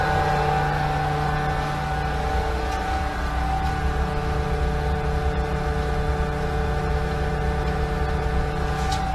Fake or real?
real